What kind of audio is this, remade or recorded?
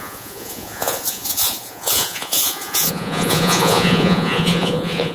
remade